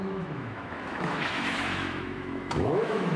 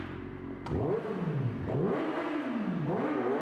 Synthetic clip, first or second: first